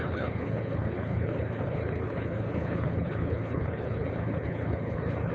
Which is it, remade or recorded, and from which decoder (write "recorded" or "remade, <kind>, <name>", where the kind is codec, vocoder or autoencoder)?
remade, codec, HILCodec